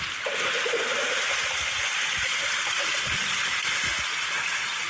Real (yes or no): yes